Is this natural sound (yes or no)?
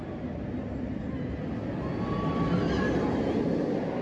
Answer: yes